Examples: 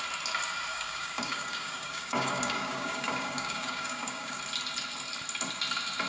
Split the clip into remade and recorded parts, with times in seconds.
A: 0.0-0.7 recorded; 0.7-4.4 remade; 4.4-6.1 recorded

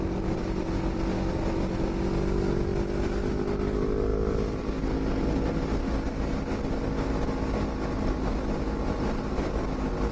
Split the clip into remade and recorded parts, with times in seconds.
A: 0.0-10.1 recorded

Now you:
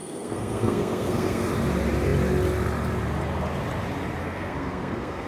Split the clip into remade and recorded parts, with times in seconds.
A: 0.0-1.5 remade; 1.5-4.2 recorded; 4.2-5.3 remade